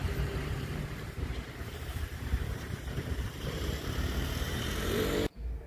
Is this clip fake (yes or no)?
yes